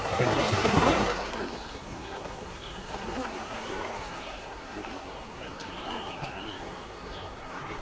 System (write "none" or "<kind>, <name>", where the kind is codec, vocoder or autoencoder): codec, SNAC